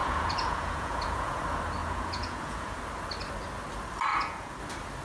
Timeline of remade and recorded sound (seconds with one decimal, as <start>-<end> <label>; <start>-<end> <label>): 0.0-1.4 remade; 1.4-1.8 recorded; 1.8-2.8 remade; 2.8-4.1 recorded; 4.1-4.6 remade; 4.6-5.0 recorded